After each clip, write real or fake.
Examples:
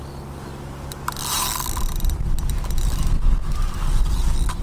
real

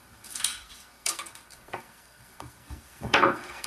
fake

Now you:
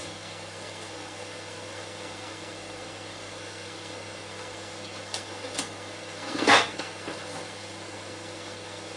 fake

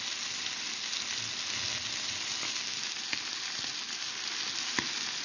real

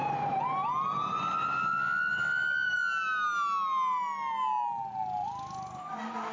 real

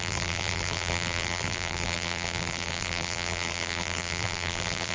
fake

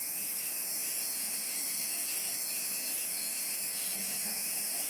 fake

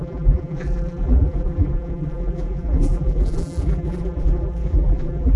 fake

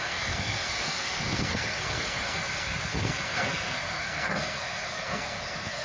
fake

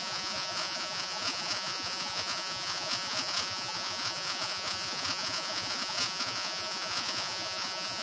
fake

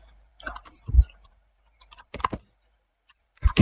fake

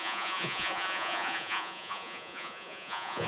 fake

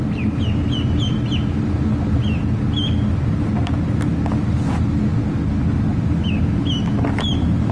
real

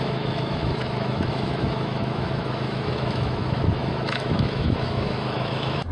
fake